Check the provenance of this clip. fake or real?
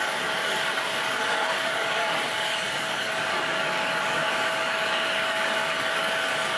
fake